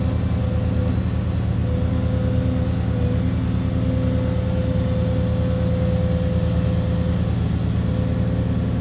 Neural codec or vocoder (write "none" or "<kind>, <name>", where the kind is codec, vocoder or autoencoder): none